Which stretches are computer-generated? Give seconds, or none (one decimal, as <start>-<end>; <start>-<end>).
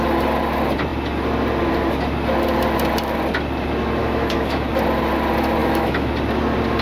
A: 4.0-4.7; 5.6-6.1